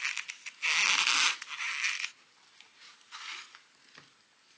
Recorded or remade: recorded